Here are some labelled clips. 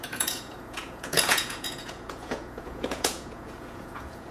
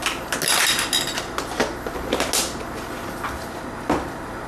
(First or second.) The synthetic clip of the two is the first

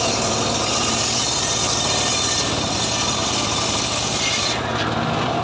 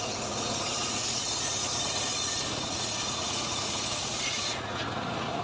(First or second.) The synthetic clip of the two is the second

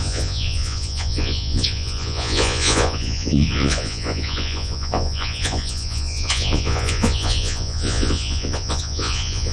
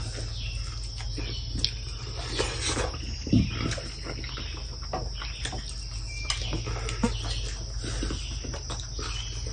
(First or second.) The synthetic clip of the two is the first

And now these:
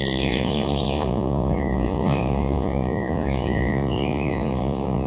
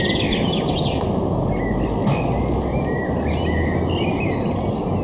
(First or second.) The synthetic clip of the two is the first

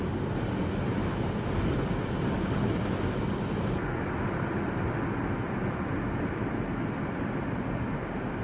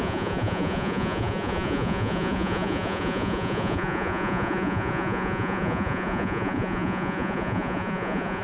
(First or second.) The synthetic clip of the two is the second